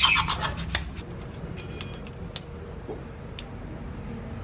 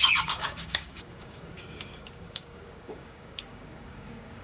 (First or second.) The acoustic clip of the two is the first